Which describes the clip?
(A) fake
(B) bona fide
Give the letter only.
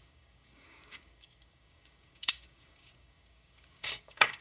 A